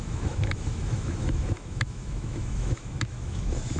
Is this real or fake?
fake